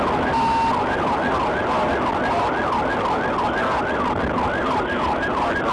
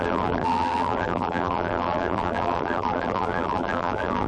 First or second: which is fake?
second